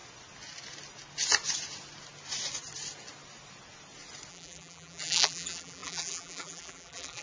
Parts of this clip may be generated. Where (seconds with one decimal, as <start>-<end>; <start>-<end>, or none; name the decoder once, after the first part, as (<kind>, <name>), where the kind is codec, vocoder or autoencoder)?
4.3-7.2 (vocoder, BigVGAN v2)